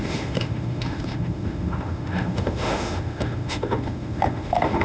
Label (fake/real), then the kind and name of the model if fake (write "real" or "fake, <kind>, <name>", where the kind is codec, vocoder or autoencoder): fake, autoencoder, DAC-VAE